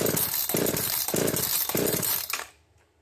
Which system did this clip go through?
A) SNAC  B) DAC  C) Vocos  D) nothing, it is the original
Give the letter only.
D